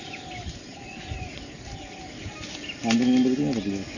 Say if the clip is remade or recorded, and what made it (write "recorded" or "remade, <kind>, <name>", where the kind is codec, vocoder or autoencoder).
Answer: recorded